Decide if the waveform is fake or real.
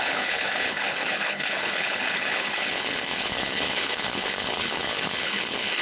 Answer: fake